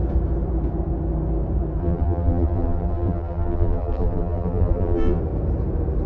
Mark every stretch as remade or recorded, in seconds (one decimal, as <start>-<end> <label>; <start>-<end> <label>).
0.0-1.8 recorded; 1.8-5.2 remade; 5.2-6.1 recorded